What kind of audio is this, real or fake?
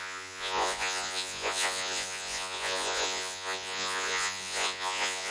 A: fake